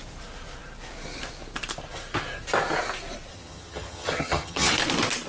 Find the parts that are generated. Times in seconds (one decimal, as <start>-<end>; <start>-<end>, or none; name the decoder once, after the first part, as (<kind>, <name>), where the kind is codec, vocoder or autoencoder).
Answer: 3.3-4.7 (vocoder, HiFi-GAN)

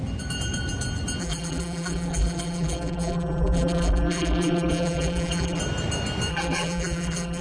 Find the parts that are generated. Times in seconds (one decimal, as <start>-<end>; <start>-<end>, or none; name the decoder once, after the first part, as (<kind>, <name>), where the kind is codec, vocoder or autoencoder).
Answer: 1.2-5.6 (vocoder, BigVGAN v2); 6.3-7.4

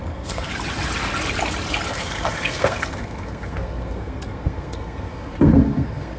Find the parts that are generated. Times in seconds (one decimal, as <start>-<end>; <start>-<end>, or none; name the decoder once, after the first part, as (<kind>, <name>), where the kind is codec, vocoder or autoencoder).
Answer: 0.0-0.5 (codec, SNAC); 1.9-6.2

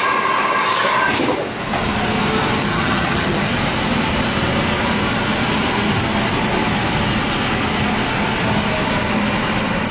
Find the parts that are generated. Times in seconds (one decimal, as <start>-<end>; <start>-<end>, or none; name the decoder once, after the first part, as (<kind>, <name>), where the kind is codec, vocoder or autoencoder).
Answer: 2.6-3.5 (vocoder, HiFi-GAN)

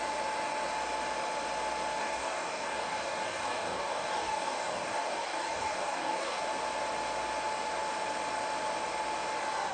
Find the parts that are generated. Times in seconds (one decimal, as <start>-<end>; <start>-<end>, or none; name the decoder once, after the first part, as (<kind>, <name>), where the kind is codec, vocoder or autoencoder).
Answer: 2.0-6.4 (codec, DAC)

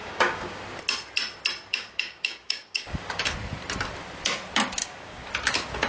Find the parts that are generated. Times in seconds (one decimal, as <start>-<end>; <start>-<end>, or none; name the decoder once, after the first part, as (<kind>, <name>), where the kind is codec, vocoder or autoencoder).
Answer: 0.0-0.6 (codec, DAC); 1.7-3.2; 4.8-5.3

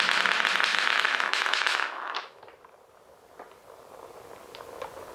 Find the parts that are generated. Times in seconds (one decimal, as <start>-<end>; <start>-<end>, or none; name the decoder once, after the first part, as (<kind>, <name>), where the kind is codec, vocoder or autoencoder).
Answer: 0.7-2.4 (autoencoder, DAC-VAE)